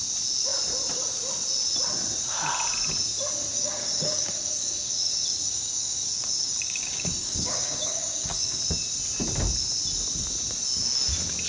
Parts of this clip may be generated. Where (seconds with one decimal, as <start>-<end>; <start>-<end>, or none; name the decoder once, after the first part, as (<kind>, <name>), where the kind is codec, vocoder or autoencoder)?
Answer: 3.5-8.6 (codec, DAC)

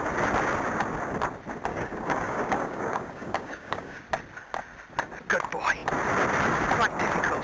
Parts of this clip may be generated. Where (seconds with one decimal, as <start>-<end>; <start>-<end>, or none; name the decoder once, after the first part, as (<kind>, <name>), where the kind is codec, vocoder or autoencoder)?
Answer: 1.7-4.0 (codec, DAC)

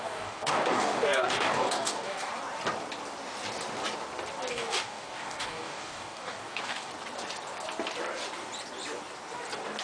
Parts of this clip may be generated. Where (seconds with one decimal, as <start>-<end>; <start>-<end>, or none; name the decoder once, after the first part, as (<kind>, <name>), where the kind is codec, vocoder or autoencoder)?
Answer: 0.0-2.3 (codec, DAC); 4.5-6.9

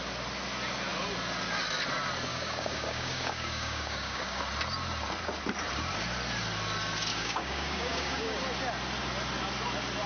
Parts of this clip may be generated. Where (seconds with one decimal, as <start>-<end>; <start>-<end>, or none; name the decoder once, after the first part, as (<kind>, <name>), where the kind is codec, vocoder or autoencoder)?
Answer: 2.3-4.4 (codec, DAC); 7.1-8.4